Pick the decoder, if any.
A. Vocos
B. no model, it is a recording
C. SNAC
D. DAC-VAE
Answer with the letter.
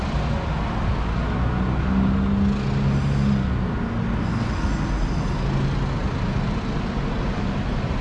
B